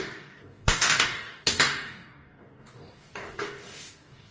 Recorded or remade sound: remade